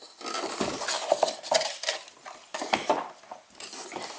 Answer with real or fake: real